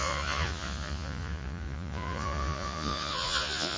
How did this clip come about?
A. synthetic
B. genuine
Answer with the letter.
A